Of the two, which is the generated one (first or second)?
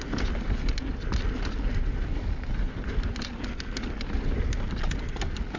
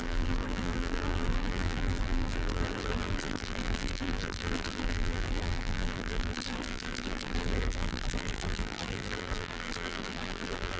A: second